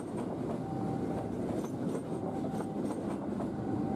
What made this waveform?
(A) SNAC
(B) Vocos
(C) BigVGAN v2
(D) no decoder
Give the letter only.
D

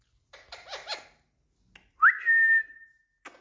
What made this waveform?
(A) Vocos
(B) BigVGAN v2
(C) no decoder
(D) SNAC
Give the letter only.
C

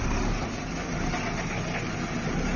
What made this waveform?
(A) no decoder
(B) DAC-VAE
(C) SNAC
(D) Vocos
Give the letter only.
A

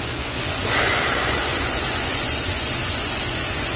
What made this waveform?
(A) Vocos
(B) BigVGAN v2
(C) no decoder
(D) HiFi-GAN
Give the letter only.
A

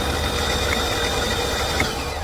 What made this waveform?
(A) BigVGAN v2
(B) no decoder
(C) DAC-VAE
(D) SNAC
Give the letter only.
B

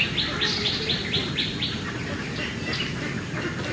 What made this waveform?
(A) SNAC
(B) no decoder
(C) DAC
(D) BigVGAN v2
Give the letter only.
B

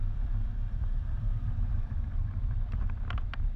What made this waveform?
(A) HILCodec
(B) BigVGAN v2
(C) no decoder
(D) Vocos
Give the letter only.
B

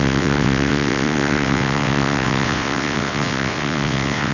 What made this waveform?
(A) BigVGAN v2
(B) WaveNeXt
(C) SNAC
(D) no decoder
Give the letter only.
B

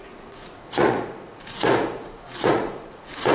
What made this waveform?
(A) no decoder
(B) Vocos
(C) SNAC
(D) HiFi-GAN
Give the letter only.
B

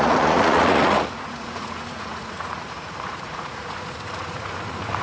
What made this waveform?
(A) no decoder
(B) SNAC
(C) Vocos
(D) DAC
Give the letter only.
C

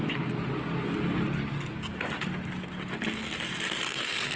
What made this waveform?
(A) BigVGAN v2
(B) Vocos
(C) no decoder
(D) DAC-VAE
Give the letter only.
C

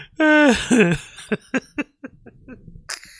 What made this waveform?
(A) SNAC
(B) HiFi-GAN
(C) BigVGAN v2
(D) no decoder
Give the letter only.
D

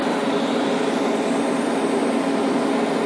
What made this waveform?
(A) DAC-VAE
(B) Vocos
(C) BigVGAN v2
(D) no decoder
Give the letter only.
D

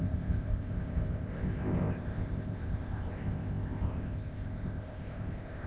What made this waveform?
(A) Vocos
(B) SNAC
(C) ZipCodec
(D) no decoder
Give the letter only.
C